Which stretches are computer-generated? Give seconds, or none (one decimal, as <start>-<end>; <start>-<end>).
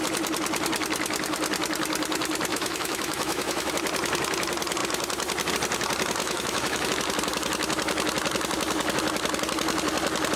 2.5-3.7; 6.2-6.9